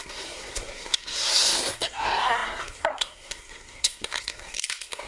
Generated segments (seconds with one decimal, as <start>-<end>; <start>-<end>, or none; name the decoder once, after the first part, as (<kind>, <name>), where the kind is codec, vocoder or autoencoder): 0.0-5.1 (codec, SNAC)